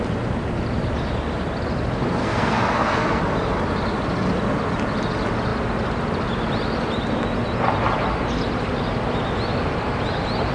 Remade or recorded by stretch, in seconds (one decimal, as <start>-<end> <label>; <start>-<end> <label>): 0.0-2.2 recorded; 2.2-3.2 remade; 3.2-10.5 recorded